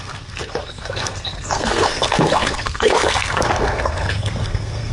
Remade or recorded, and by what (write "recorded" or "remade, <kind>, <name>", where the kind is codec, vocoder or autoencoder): remade, codec, SNAC